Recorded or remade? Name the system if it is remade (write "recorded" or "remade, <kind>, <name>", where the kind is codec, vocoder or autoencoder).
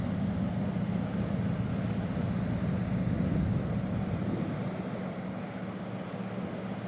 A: recorded